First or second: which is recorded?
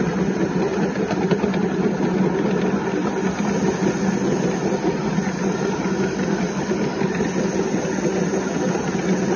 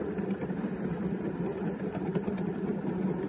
first